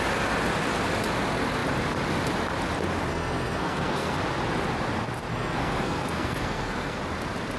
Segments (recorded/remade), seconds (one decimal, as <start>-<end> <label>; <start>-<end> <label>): 0.0-3.1 recorded; 3.1-4.2 remade; 4.2-5.3 recorded; 5.3-7.0 remade; 7.0-7.6 recorded